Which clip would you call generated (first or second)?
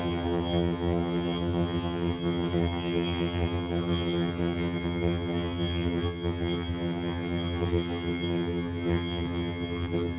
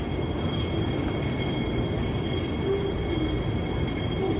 first